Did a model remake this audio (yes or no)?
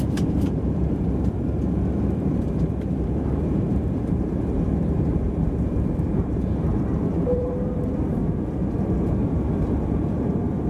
yes